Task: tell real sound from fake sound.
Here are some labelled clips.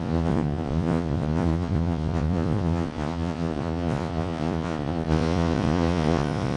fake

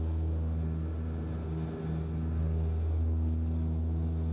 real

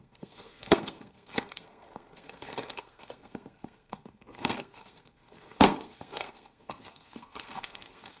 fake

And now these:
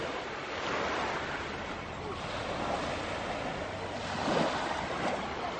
real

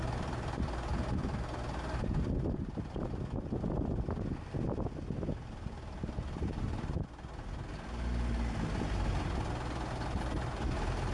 real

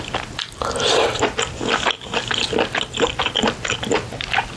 real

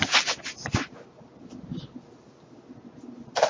real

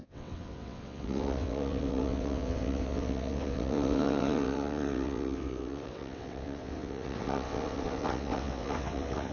fake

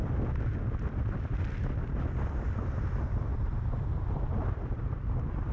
fake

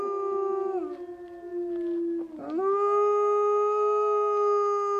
real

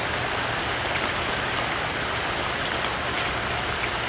real